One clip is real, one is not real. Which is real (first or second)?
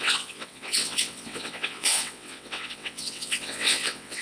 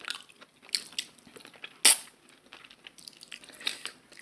second